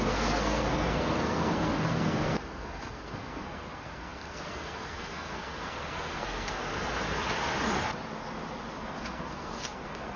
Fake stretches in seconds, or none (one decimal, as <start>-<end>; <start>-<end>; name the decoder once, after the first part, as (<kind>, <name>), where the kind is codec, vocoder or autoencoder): 0.0-6.7 (codec, SNAC); 8.8-10.2